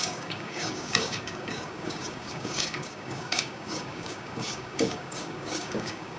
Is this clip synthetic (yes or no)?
yes